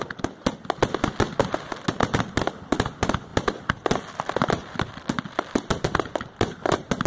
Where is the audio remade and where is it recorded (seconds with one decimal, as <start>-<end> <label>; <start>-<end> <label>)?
0.0-7.1 recorded